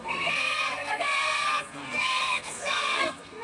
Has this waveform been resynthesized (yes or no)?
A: yes